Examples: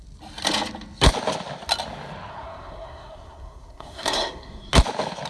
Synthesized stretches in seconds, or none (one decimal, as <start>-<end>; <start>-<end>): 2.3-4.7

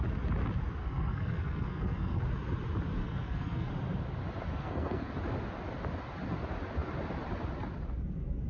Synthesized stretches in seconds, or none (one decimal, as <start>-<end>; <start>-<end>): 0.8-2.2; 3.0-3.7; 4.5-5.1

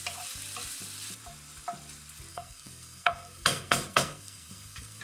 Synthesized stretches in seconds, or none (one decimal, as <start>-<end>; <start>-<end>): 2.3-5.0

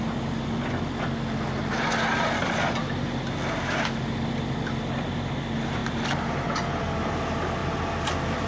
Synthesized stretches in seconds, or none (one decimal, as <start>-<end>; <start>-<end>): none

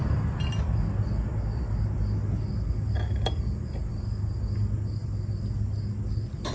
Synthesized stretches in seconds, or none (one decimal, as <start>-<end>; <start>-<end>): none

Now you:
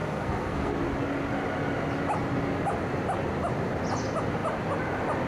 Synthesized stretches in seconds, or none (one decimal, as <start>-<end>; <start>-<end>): 0.0-0.7

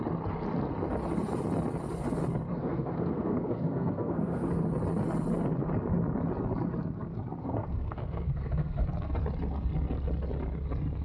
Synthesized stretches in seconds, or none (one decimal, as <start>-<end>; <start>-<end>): 2.5-4.6; 7.4-8.8

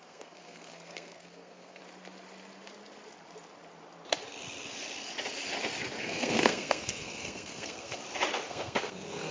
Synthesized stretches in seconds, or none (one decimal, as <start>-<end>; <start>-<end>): 0.0-1.8; 6.0-8.0; 8.5-9.3